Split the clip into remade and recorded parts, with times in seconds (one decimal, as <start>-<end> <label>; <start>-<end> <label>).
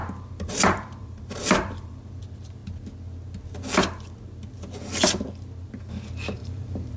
0.0-2.2 remade; 2.2-6.4 recorded; 6.4-7.0 remade